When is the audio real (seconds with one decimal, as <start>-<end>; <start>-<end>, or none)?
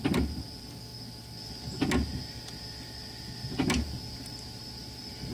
0.0-5.3